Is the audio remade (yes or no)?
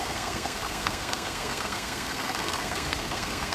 yes